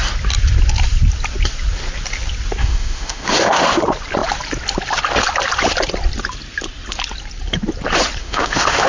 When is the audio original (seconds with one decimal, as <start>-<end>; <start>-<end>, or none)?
0.0-2.6; 3.8-8.2